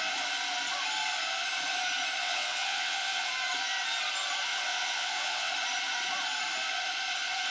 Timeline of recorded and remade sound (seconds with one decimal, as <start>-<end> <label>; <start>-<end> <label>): 0.0-2.2 recorded; 2.2-3.3 remade; 3.3-4.5 recorded; 4.5-5.5 remade; 5.5-7.5 recorded